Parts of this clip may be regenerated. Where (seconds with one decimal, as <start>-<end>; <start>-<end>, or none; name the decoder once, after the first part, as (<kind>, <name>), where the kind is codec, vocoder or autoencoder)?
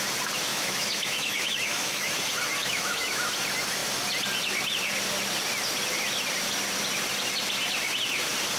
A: 0.5-2.1 (autoencoder, DAC-VAE); 2.6-3.3